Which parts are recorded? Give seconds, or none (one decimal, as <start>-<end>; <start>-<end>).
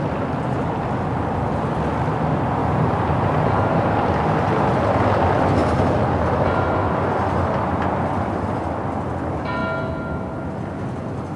0.0-2.6; 4.1-11.4